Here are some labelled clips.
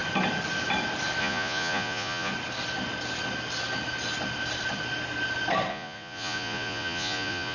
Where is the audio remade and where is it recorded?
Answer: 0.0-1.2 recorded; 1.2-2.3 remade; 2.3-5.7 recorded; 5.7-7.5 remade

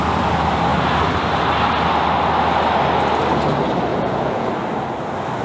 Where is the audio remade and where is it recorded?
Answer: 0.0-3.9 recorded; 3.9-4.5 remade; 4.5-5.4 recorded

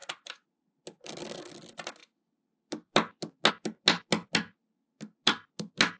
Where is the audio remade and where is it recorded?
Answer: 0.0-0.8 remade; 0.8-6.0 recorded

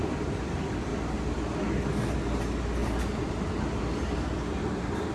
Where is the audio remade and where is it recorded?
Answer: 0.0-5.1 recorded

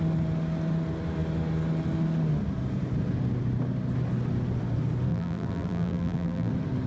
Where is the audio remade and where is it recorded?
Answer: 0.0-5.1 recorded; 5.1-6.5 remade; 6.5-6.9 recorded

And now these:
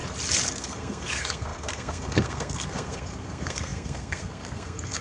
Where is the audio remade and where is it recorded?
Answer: 0.0-0.6 recorded; 0.6-5.0 remade

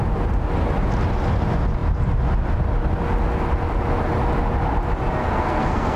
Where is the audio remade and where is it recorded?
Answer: 0.0-5.2 recorded; 5.2-6.0 remade